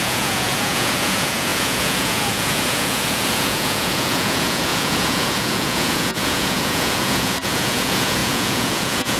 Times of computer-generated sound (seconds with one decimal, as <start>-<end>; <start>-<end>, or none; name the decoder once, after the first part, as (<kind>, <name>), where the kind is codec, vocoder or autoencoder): 0.0-9.2 (vocoder, Vocos)